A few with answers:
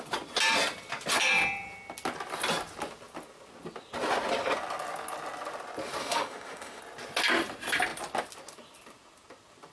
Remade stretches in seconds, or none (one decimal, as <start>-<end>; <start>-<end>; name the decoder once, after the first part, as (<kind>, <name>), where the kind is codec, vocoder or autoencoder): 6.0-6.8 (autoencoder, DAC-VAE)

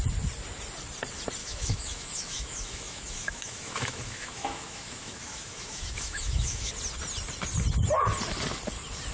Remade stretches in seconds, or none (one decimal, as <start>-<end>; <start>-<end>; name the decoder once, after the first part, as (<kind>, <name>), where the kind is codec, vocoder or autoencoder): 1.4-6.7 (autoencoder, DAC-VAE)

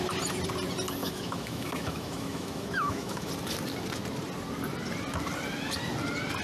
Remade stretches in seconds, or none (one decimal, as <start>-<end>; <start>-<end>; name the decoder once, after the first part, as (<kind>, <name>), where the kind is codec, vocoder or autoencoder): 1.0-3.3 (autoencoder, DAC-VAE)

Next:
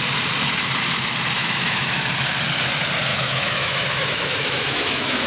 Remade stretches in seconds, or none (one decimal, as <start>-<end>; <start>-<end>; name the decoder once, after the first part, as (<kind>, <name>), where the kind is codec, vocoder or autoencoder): 1.4-2.0 (autoencoder, DAC-VAE); 3.1-5.3